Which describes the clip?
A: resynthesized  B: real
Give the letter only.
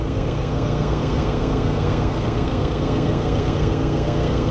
A